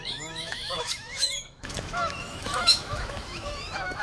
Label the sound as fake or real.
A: fake